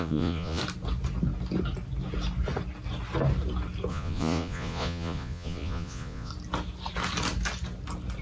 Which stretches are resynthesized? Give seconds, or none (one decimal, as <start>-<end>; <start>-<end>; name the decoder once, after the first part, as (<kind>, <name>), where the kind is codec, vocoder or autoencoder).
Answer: 0.0-0.6 (vocoder, Vocos); 3.9-6.3